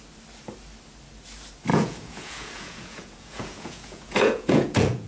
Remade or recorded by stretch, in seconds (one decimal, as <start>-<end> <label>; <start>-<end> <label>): 0.0-1.7 recorded; 1.7-5.1 remade